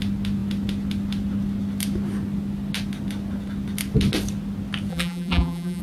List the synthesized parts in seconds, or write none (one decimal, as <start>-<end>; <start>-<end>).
4.9-5.8